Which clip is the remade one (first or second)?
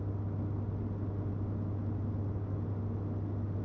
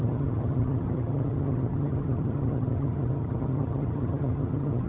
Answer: second